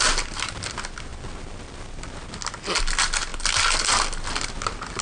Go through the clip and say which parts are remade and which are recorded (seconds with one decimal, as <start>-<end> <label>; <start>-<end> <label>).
0.0-5.0 recorded